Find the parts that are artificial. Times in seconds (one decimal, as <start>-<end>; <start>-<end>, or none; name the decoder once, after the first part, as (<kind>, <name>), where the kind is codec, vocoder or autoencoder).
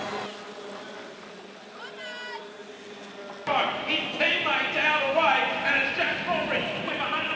none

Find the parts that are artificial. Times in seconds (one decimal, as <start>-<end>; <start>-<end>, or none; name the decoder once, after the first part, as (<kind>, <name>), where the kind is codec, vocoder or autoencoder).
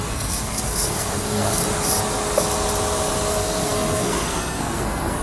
0.0-1.6 (codec, SNAC); 3.3-5.2